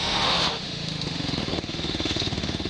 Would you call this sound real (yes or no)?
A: no